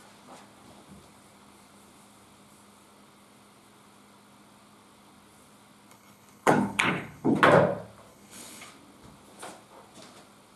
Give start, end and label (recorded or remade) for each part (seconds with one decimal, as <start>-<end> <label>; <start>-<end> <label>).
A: 0.0-5.9 recorded; 5.9-7.4 remade; 7.4-8.1 recorded; 8.1-8.7 remade; 8.7-10.6 recorded